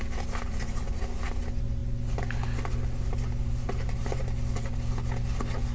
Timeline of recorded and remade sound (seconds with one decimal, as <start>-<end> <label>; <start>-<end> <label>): 0.0-5.7 recorded